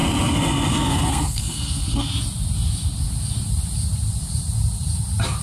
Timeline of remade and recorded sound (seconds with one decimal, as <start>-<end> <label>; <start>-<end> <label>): 0.0-0.7 recorded; 0.7-2.1 remade; 2.1-5.4 recorded